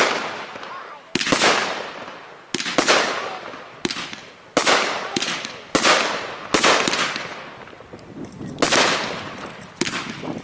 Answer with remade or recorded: recorded